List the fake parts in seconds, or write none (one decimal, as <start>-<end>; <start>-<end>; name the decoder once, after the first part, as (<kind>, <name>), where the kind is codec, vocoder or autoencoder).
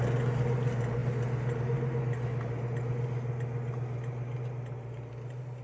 none